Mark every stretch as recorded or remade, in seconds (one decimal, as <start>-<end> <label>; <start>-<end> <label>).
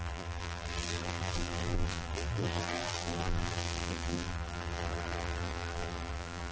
0.0-6.5 remade